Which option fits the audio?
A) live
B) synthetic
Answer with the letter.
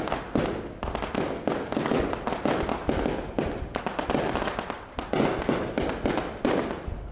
A